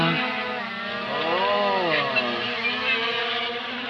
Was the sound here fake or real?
real